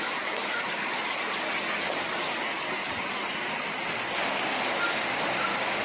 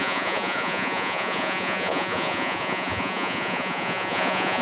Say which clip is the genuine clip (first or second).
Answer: first